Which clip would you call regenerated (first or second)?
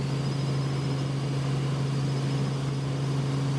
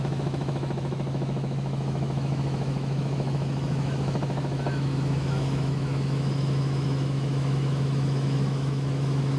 second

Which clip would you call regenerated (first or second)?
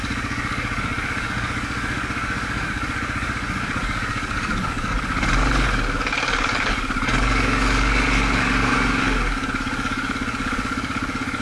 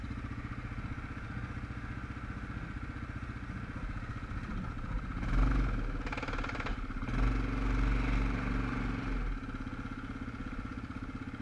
first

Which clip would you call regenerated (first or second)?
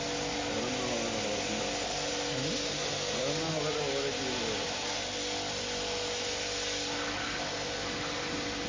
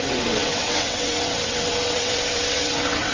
second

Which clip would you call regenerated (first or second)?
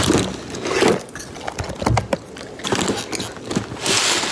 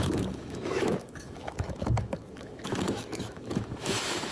second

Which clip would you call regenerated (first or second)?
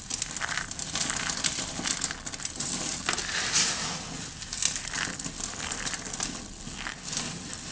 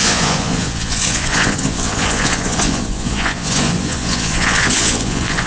second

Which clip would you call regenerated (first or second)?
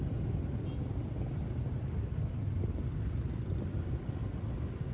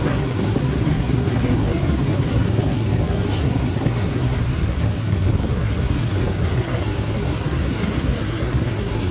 second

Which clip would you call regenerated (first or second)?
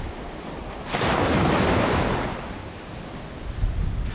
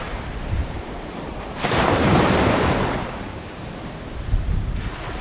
second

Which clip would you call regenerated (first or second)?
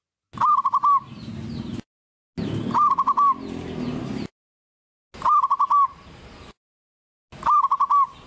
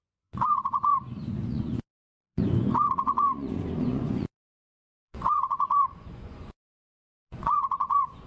second